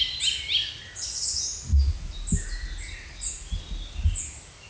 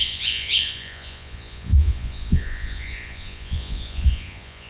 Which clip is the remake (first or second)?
second